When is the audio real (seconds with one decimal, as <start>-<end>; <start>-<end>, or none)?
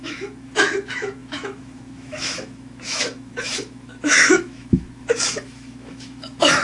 none